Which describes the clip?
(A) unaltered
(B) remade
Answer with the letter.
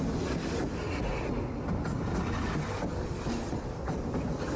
A